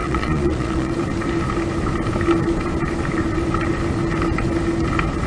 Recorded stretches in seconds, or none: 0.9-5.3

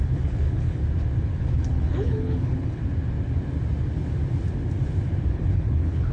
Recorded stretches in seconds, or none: 0.8-1.4; 2.8-5.3